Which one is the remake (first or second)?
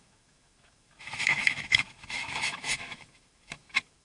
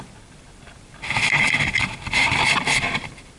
first